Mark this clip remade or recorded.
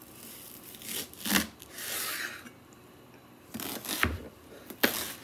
recorded